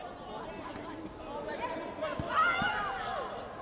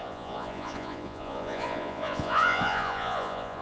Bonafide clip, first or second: first